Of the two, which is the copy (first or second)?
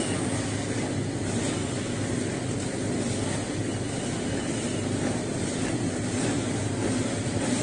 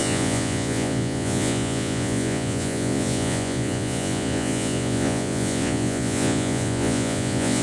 second